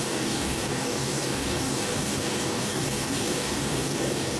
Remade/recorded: remade